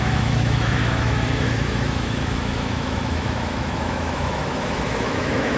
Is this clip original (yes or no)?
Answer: no